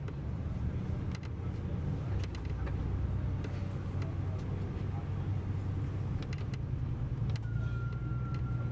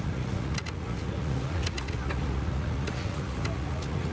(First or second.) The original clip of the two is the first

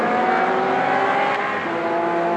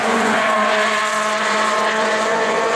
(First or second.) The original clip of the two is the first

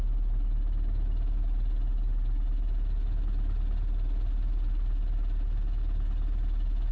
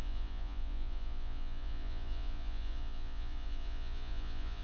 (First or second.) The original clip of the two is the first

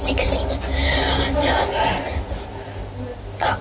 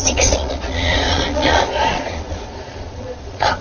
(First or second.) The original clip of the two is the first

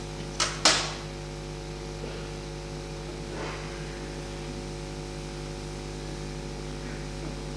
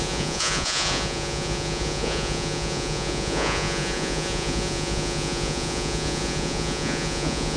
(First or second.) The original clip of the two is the first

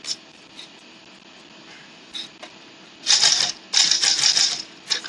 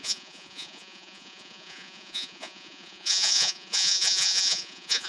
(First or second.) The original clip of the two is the first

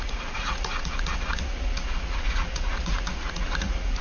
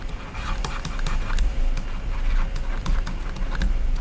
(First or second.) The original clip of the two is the second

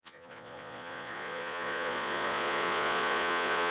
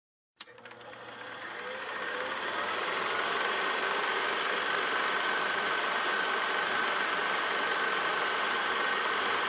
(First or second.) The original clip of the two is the second